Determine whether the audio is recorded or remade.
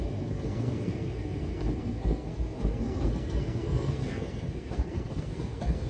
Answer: remade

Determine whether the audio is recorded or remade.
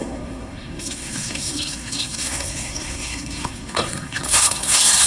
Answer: remade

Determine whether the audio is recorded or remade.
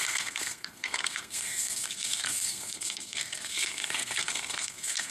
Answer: remade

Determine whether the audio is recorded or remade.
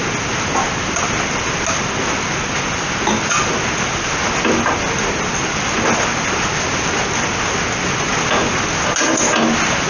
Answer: recorded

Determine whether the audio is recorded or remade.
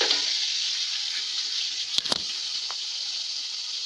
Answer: recorded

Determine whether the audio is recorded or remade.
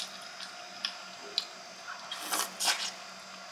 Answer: recorded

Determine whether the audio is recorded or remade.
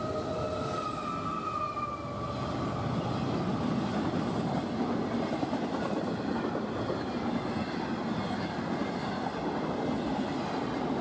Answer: recorded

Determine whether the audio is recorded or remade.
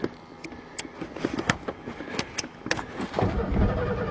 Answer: recorded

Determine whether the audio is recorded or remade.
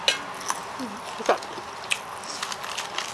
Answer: recorded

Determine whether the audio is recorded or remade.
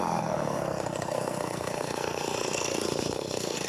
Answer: remade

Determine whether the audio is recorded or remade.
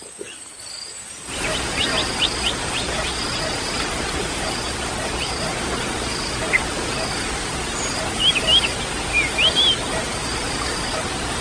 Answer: recorded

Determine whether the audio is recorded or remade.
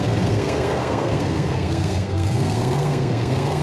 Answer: remade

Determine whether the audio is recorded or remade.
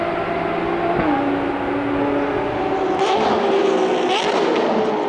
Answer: recorded